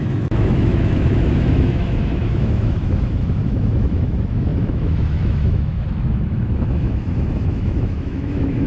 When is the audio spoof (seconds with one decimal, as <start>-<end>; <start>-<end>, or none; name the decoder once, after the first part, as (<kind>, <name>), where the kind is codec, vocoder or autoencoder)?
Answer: 0.0-8.7 (autoencoder, DAC-VAE)